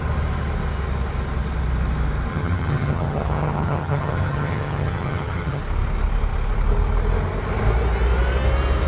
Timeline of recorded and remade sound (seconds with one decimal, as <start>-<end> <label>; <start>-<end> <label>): 0.0-2.3 recorded; 2.3-5.6 remade; 5.6-8.9 recorded